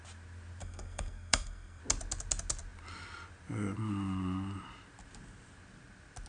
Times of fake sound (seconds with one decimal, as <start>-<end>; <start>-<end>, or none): 0.6-1.8